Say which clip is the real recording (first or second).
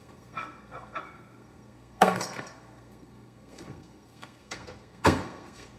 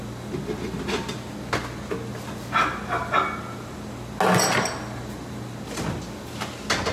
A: second